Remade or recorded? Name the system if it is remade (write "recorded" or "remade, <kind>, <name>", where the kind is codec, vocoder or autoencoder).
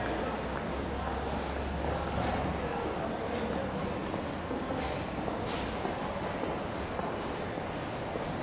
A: recorded